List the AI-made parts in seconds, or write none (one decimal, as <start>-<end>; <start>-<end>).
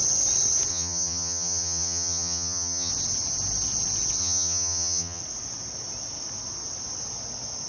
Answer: 0.7-2.9; 4.2-5.2